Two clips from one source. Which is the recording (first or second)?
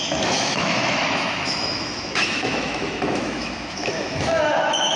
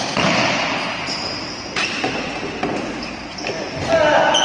second